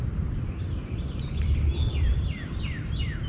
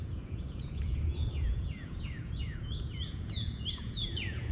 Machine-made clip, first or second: second